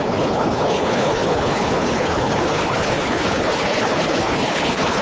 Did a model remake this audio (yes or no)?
yes